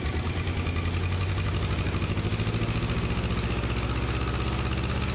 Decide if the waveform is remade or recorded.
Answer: recorded